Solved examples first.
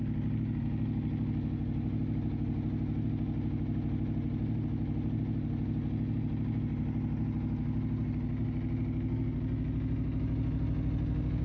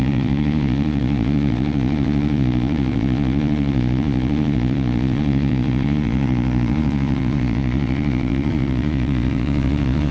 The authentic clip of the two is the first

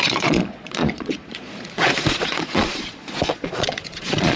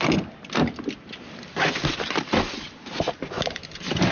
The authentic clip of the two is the second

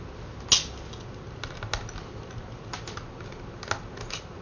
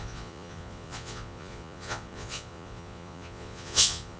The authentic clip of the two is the first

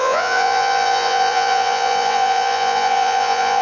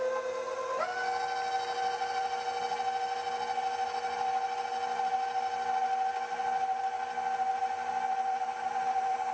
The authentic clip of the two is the second